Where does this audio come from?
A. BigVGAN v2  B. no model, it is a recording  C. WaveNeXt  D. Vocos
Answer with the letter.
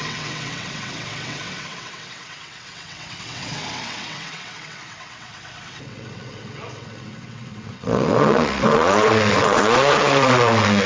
C